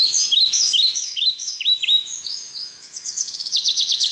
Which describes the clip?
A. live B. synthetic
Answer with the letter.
B